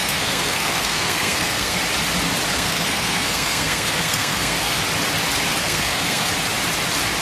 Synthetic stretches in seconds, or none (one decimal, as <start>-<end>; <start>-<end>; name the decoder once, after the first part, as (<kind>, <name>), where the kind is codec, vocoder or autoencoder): 0.0-1.8 (codec, SNAC); 2.5-4.8; 5.6-6.3